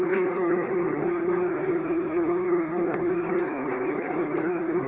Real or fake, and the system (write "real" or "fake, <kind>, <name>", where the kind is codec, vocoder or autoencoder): fake, codec, SNAC